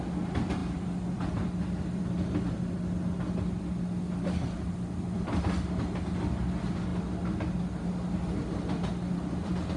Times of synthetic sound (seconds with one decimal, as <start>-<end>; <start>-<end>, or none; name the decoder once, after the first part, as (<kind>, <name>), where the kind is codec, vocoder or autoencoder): none